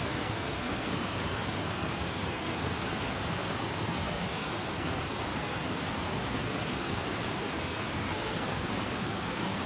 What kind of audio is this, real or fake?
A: fake